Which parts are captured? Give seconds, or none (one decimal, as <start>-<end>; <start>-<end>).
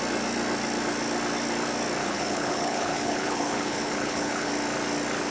0.0-2.0; 4.5-5.3